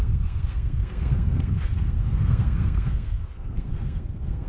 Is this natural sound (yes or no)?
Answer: no